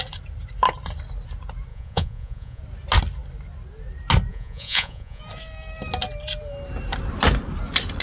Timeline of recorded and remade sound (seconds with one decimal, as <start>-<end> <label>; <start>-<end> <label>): 0.0-1.7 recorded; 1.7-2.6 remade; 2.6-4.3 recorded; 4.3-5.2 remade; 5.2-8.0 recorded